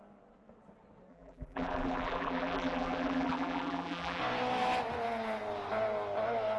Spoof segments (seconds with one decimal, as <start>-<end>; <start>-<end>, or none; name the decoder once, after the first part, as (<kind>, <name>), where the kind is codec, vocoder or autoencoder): 1.1-4.2 (vocoder, BigVGAN v2)